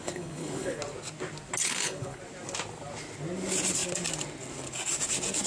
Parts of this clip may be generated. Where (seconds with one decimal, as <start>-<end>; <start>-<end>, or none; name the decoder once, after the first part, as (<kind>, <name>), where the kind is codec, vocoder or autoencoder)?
0.0-0.8 (codec, HILCodec); 1.6-2.2